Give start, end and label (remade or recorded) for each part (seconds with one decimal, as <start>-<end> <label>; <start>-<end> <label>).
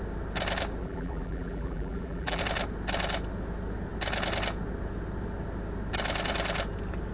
0.0-0.8 recorded; 0.8-2.4 remade; 2.4-7.1 recorded